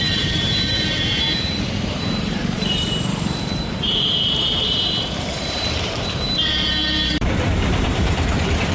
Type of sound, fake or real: fake